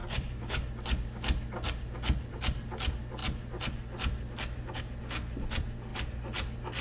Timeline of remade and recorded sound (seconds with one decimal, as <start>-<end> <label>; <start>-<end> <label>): 0.0-0.7 remade; 0.7-6.8 recorded